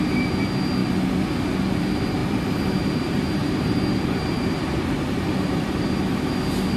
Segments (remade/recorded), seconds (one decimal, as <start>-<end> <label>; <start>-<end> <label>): 0.0-0.8 recorded; 0.8-1.3 remade; 1.3-2.2 recorded; 2.2-6.3 remade; 6.3-6.8 recorded